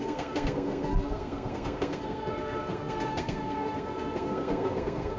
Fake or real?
fake